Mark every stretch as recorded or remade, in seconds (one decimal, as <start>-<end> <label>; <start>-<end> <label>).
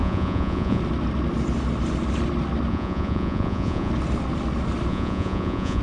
0.0-0.8 remade; 0.8-2.7 recorded; 2.7-3.9 remade; 3.9-4.9 recorded; 4.9-5.8 remade